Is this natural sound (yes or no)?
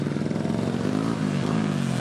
yes